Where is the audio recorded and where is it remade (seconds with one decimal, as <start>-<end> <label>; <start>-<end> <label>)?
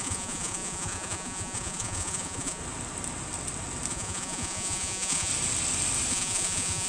0.0-2.6 remade; 2.6-3.9 recorded; 3.9-5.3 remade; 5.3-6.1 recorded; 6.1-6.9 remade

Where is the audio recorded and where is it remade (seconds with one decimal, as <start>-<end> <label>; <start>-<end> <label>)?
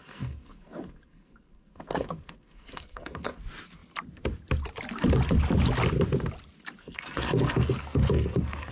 0.0-3.4 remade; 3.4-6.8 recorded; 6.8-8.7 remade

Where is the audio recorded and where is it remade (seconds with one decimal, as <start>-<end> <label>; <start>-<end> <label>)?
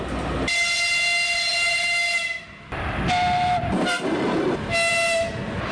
0.0-5.7 recorded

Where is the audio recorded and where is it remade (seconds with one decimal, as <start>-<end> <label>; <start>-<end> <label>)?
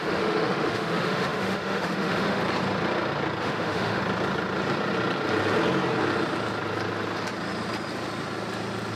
0.0-2.4 remade; 2.4-3.4 recorded; 3.4-4.0 remade; 4.0-9.0 recorded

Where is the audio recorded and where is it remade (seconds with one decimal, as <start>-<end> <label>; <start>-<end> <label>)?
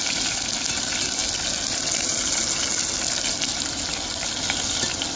0.0-5.2 recorded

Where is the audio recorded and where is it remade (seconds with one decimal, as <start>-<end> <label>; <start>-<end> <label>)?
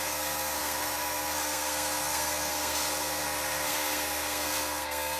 0.0-5.2 remade